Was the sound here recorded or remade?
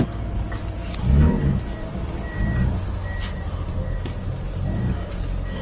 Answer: recorded